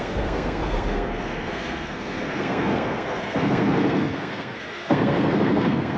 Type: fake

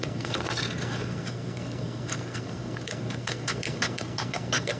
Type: fake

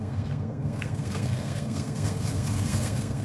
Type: fake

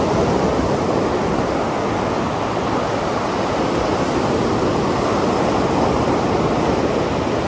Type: real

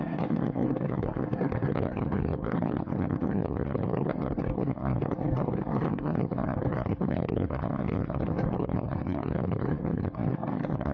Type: fake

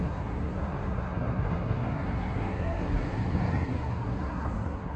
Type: fake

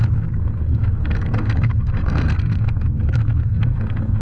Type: fake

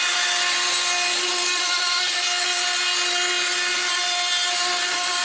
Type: real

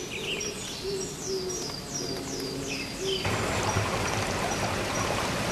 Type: real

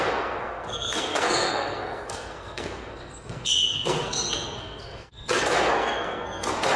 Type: fake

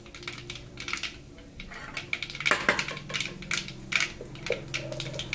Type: real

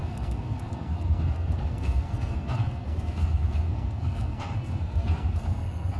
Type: fake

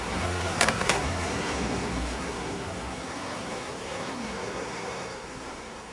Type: fake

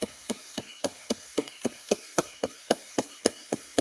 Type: fake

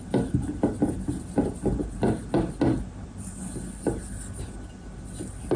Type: real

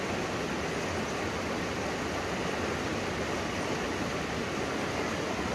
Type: real